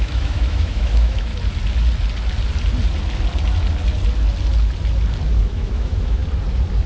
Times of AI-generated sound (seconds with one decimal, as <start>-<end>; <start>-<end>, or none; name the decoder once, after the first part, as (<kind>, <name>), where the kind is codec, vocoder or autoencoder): 0.0-1.3 (autoencoder, DAC-VAE); 5.4-6.2